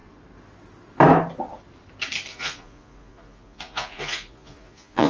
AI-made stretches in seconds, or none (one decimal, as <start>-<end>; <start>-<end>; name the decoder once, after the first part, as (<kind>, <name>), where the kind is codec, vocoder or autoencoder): 2.3-5.1 (vocoder, Vocos)